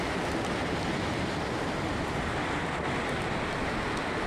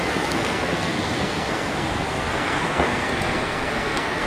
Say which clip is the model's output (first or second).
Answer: second